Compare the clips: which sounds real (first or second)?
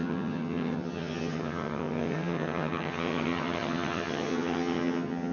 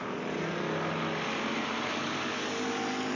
second